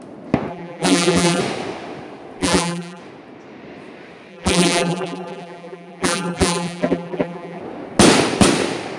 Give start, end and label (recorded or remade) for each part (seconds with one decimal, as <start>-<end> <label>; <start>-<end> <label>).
0.0-0.5 recorded; 0.5-1.4 remade; 1.4-2.4 recorded; 2.4-3.0 remade; 3.0-4.3 recorded; 4.3-7.6 remade; 7.6-9.0 recorded